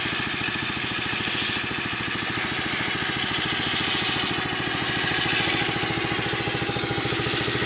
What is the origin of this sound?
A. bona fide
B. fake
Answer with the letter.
A